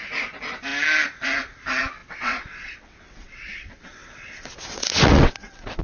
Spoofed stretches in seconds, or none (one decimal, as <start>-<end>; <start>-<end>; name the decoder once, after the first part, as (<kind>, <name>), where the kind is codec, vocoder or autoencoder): 2.0-5.8 (vocoder, WaveNeXt)